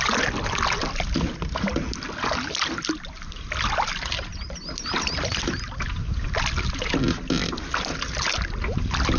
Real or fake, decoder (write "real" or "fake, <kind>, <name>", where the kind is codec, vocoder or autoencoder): real